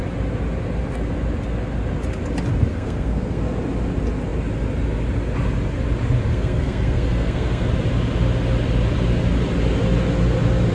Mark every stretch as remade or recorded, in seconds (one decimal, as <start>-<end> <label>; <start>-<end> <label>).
0.0-2.7 recorded; 2.7-3.4 remade; 3.4-6.3 recorded; 6.3-7.7 remade; 7.7-10.7 recorded